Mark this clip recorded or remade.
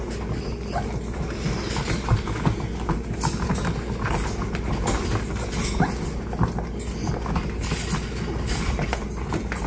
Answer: recorded